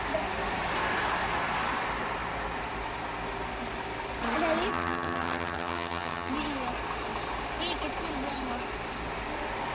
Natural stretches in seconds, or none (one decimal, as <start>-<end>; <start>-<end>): 0.0-4.7; 6.3-9.7